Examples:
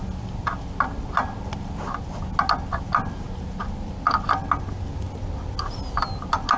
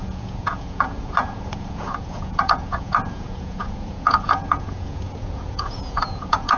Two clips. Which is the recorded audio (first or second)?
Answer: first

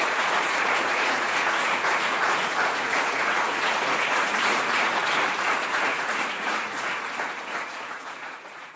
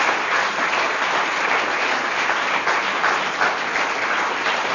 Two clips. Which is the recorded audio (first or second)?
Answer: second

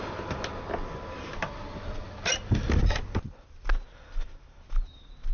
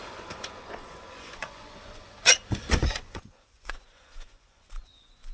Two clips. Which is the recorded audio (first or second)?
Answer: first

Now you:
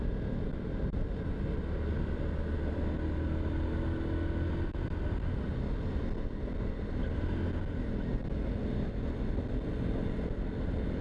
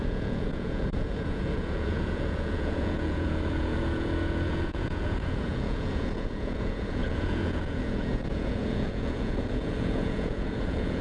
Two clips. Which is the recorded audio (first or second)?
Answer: first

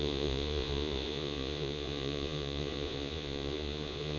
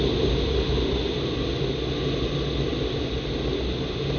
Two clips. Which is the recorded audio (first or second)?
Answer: second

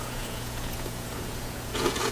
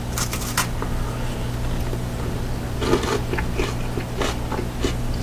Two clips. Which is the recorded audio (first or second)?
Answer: second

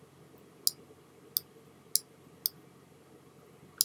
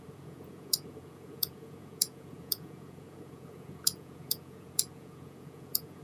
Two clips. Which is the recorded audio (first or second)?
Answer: first